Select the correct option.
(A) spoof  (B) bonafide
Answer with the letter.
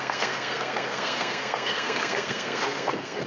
A